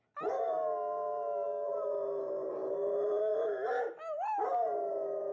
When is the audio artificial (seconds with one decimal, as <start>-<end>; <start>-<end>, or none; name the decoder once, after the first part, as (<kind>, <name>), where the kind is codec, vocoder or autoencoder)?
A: none